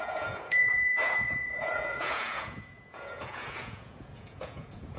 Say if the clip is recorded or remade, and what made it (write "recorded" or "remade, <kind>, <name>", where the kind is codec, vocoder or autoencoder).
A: remade, vocoder, Vocos